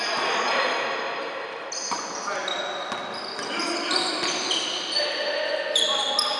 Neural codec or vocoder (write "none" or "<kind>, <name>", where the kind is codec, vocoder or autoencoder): none